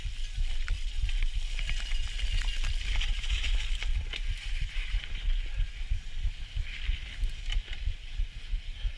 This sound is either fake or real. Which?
real